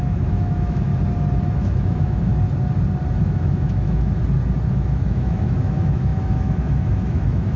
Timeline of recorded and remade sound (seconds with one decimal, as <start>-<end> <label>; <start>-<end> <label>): 0.0-0.9 remade; 0.9-1.5 recorded; 1.5-2.3 remade; 2.3-3.2 recorded; 3.2-4.2 remade; 4.2-4.7 recorded; 4.7-7.6 remade